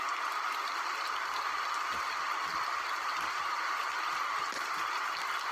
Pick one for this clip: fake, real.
real